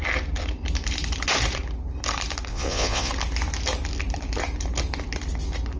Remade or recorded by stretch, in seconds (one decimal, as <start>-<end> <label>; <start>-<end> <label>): 0.0-2.5 recorded; 2.5-3.1 remade; 3.1-5.8 recorded